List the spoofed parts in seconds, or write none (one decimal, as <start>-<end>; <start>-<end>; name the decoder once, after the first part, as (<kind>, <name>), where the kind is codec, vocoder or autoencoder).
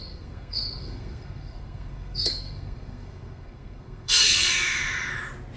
0.0-4.5 (codec, SNAC)